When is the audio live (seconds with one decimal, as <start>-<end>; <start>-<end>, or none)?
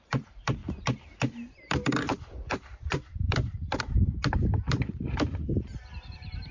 none